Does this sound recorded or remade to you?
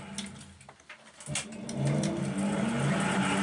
recorded